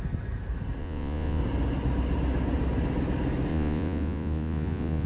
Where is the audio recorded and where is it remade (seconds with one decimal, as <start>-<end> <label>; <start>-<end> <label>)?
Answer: 0.0-0.8 recorded; 0.8-1.4 remade; 1.4-3.5 recorded; 3.5-5.1 remade